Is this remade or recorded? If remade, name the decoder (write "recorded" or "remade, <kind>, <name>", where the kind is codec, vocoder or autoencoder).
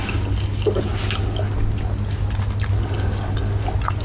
recorded